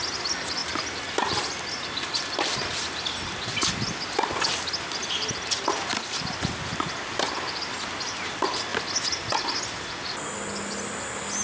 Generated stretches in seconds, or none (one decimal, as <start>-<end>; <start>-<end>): none